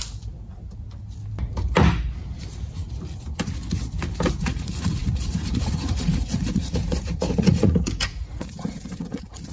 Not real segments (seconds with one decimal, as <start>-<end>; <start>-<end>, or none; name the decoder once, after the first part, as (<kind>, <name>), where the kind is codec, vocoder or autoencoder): 4.3-9.5 (vocoder, Vocos)